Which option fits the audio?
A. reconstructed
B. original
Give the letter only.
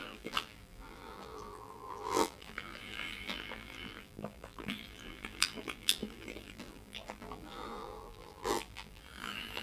A